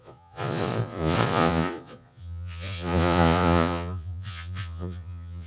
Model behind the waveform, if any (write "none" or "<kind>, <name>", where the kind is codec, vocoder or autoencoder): vocoder, Vocos